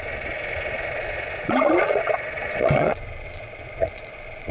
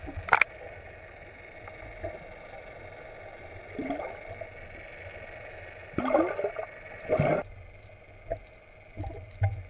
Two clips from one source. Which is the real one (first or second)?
second